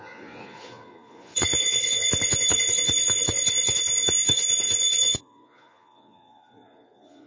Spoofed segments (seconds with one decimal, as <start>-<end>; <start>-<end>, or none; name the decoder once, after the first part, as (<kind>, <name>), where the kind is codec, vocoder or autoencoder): 0.0-7.3 (vocoder, Vocos)

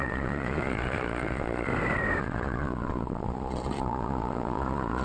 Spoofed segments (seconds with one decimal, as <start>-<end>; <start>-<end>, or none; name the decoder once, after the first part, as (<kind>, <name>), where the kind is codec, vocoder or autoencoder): 0.0-1.7 (vocoder, Vocos); 2.2-5.0

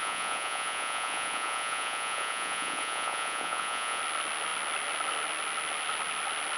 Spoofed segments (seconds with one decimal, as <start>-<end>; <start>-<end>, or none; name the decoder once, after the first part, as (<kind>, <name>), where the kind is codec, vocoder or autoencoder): 0.0-4.0 (vocoder, Vocos)

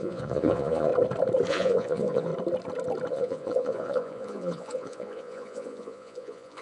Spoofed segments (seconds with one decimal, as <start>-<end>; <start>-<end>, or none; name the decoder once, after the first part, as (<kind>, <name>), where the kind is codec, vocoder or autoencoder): 0.0-0.9 (vocoder, Vocos); 1.5-2.3; 3.1-6.6

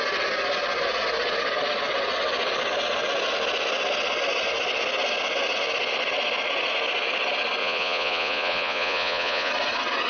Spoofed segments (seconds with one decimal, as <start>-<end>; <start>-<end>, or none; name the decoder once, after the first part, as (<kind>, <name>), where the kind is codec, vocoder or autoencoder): 7.6-9.5 (vocoder, Vocos)

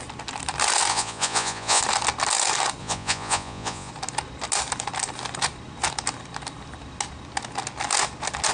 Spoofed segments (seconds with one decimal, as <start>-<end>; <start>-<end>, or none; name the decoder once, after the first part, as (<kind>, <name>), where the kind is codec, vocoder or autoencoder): 0.9-1.8 (vocoder, Vocos); 2.8-3.9

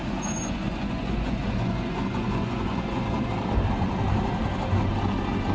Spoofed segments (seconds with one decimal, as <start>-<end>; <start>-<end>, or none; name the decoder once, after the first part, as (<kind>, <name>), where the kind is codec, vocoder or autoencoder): 0.0-3.3 (vocoder, Vocos)